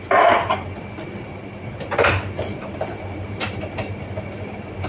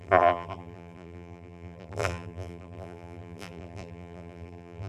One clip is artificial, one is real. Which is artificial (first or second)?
second